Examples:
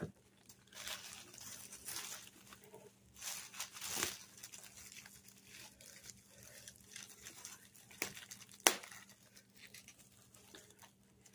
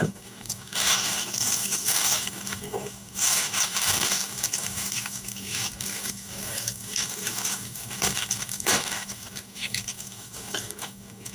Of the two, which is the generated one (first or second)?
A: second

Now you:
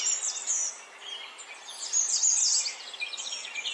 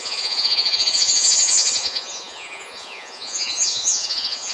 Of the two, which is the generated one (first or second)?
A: second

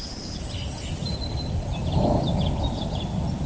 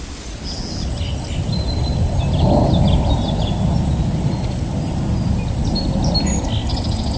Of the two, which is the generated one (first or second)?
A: first